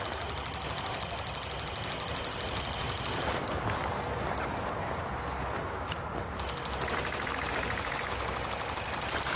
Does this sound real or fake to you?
real